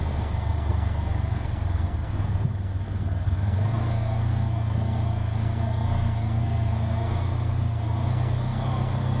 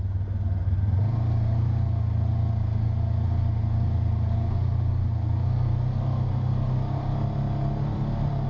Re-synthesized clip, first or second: first